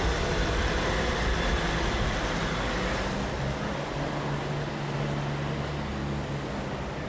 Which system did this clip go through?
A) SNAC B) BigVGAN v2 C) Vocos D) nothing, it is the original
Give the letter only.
D